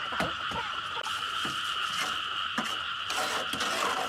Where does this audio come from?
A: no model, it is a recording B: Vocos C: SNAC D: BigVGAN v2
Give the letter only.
A